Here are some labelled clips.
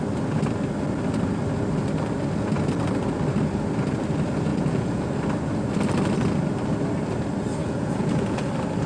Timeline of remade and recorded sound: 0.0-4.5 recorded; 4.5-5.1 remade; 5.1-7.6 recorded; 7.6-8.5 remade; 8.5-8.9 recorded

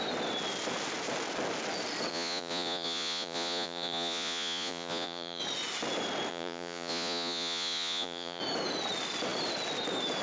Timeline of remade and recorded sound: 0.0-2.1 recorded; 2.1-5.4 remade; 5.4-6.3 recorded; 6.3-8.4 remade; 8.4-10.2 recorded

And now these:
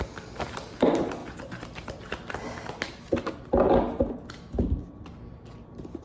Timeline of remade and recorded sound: 0.0-6.0 recorded

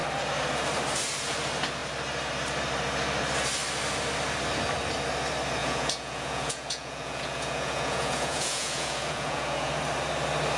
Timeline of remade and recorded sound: 0.0-5.6 recorded; 5.6-9.7 remade; 9.7-10.6 recorded

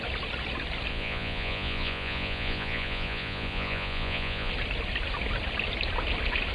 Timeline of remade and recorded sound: 0.0-0.9 recorded; 0.9-4.5 remade; 4.5-6.5 recorded

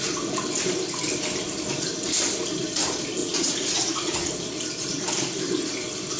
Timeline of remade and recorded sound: 0.0-3.2 recorded; 3.2-4.3 remade; 4.3-6.2 recorded